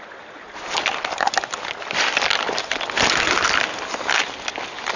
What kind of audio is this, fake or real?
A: real